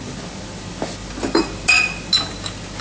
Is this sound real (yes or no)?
yes